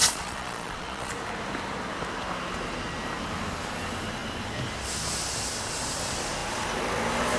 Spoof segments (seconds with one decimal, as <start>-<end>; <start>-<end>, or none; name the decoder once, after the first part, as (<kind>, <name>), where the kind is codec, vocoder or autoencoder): 0.0-1.1 (vocoder, Vocos)